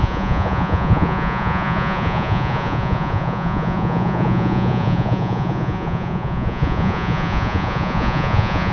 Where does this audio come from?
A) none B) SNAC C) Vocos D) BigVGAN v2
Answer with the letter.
C